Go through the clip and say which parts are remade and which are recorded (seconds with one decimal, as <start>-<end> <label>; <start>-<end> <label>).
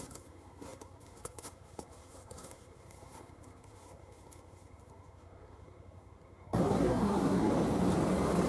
0.0-7.5 remade; 7.5-8.5 recorded